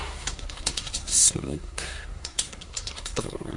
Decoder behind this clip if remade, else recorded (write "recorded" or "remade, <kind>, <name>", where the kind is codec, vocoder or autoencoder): remade, codec, SNAC